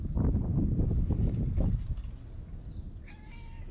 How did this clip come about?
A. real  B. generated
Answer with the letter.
A